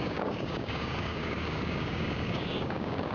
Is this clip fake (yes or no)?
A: yes